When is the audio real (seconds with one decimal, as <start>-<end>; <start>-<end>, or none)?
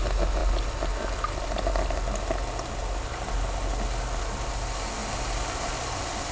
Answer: 0.0-6.3